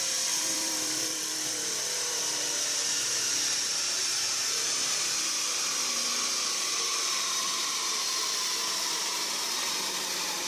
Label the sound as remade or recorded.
remade